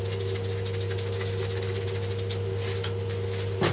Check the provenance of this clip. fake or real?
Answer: real